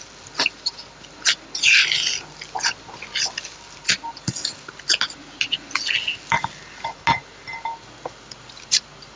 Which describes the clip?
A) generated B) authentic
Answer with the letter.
B